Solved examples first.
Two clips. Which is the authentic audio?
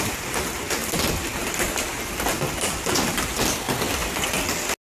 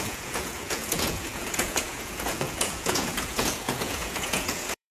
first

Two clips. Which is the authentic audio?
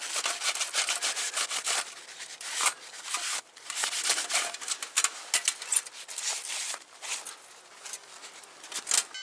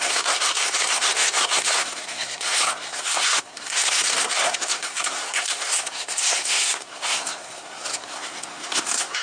first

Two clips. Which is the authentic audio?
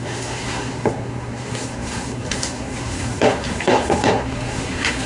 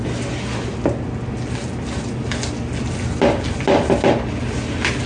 second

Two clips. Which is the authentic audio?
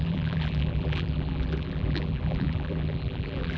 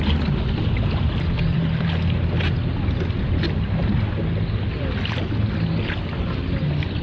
second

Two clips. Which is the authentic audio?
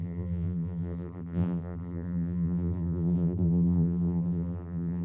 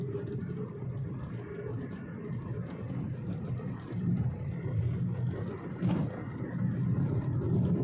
second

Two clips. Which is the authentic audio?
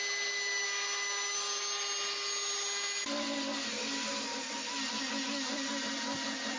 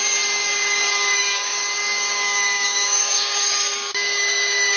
first